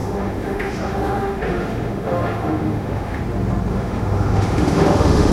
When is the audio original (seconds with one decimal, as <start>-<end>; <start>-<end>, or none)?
3.2-3.7

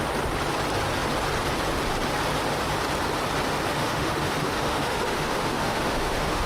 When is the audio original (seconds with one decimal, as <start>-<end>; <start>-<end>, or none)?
0.0-3.7

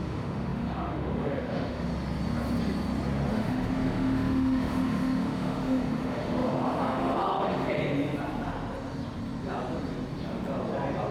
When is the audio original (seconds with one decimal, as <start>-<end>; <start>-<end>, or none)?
1.9-3.3; 7.8-11.1